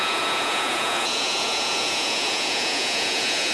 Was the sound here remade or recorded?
remade